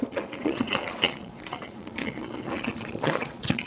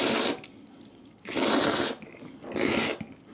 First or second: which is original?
second